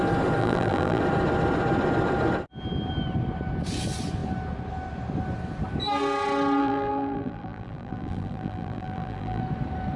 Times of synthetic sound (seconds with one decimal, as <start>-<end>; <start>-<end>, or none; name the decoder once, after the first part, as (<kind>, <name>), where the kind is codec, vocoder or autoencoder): 0.4-1.0 (vocoder, BigVGAN v2); 6.6-9.4